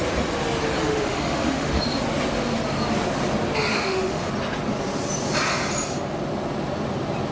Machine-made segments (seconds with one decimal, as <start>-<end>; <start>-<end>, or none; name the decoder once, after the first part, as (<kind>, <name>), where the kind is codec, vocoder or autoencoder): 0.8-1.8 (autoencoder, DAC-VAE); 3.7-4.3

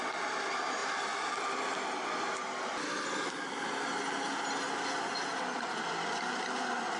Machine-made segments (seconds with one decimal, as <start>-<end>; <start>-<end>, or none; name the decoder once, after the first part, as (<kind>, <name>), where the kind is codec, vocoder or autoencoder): none

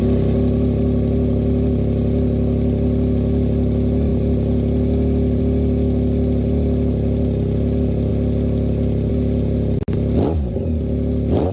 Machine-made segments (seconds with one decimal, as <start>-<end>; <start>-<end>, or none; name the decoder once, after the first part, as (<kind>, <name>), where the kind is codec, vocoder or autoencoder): none